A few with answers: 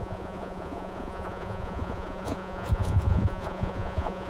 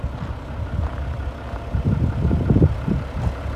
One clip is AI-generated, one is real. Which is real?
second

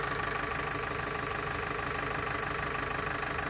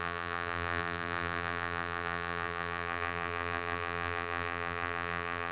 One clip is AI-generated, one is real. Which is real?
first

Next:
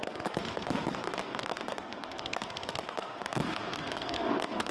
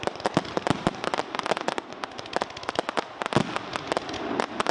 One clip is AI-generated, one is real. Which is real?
second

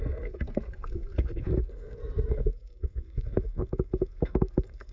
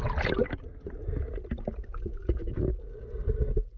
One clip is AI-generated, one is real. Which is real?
second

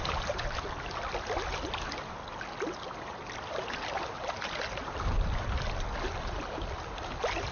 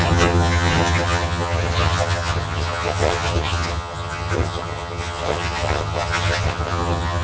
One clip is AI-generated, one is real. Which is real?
first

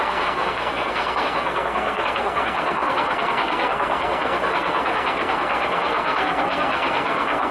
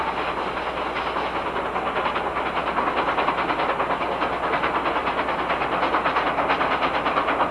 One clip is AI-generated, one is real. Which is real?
second